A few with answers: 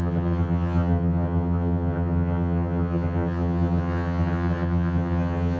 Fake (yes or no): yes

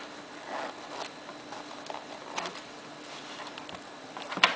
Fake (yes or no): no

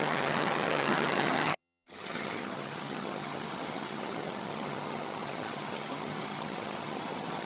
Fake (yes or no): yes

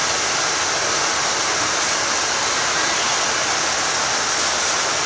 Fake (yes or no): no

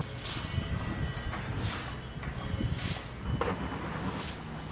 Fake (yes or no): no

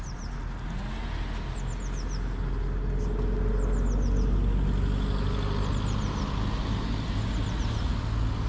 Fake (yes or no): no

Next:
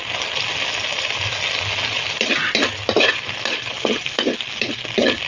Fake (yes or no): no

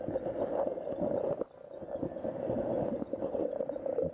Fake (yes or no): no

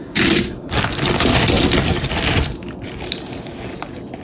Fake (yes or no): no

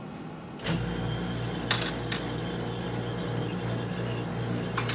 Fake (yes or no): no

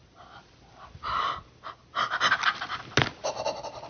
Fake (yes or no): no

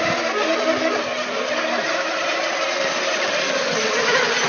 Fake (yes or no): no